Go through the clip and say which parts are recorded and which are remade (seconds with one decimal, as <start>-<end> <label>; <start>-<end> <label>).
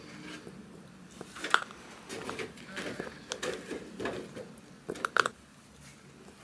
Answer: 0.0-6.4 recorded